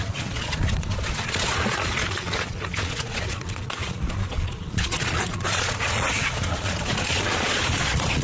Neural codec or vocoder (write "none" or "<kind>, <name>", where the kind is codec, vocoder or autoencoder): vocoder, Vocos